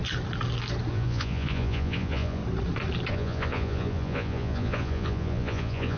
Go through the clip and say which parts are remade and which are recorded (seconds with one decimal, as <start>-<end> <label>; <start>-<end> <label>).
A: 0.0-0.9 recorded; 0.9-2.4 remade; 2.4-3.1 recorded; 3.1-6.0 remade